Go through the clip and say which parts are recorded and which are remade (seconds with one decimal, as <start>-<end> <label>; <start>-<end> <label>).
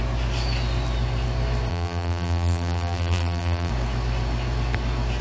0.0-1.7 recorded; 1.7-3.7 remade; 3.7-5.2 recorded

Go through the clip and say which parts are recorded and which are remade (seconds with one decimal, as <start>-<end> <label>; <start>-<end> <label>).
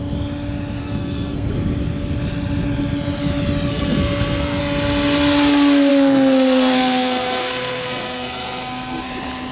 0.0-0.8 recorded; 0.8-1.5 remade; 1.5-3.7 recorded; 3.7-4.6 remade; 4.6-5.9 recorded; 5.9-9.1 remade; 9.1-9.5 recorded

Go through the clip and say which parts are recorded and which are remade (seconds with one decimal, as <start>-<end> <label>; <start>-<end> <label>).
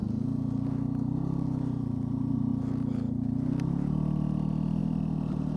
0.0-5.6 recorded